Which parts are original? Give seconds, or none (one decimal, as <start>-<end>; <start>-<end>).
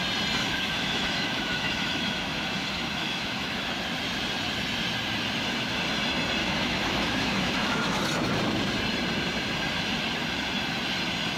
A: 0.0-0.4; 3.7-6.4; 8.0-11.4